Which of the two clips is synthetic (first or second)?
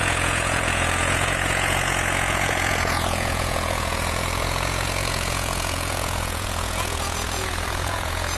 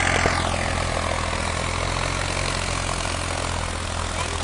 first